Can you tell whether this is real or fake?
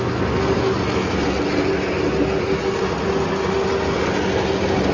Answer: real